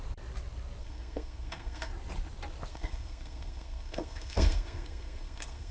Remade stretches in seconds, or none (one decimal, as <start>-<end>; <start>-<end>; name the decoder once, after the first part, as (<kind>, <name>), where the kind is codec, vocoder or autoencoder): 0.8-1.9 (codec, SNAC); 2.7-5.7